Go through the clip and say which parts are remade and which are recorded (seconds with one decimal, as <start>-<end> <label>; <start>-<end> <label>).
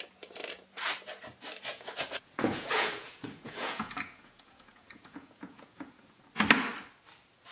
0.0-1.7 recorded; 1.7-6.2 remade; 6.2-7.5 recorded